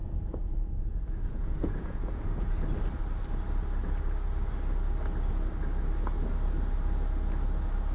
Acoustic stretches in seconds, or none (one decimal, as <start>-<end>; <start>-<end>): 2.2-7.9